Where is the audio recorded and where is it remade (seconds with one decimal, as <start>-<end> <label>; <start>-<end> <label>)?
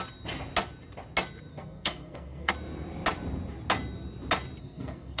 0.0-1.5 recorded; 1.5-2.5 remade; 2.5-4.6 recorded; 4.6-5.2 remade